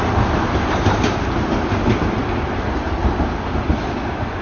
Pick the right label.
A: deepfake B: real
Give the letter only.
B